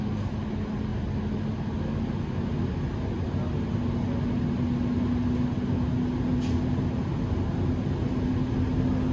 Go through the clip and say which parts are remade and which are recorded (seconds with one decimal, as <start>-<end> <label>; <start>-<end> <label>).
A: 0.0-9.1 recorded